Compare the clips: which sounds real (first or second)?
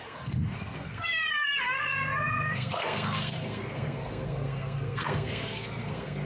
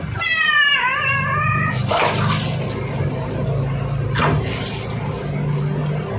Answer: second